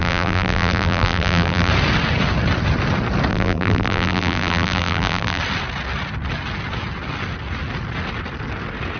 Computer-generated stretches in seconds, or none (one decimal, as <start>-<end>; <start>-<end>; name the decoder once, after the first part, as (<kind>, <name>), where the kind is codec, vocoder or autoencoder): 0.0-1.7 (vocoder, BigVGAN v2); 3.3-5.4